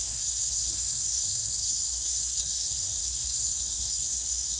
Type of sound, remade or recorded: remade